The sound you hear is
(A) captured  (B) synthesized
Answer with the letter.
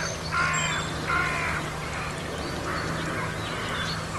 A